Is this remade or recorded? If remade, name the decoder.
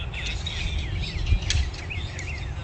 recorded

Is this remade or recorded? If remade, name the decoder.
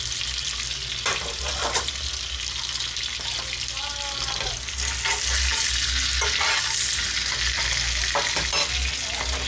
recorded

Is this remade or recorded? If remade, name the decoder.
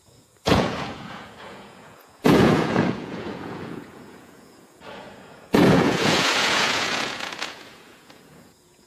remade, vocoder, Vocos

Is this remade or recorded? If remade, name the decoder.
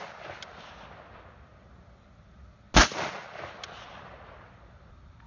recorded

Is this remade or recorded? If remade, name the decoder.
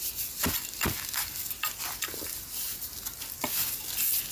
recorded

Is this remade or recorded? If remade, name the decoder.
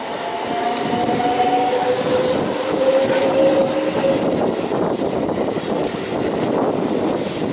recorded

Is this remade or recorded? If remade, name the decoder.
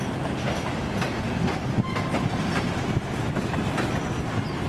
recorded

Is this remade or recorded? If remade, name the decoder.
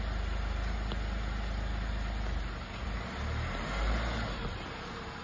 recorded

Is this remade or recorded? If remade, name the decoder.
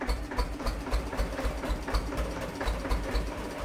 remade, vocoder, BigVGAN v2